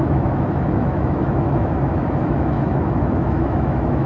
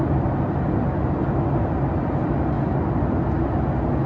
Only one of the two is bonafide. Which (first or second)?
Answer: second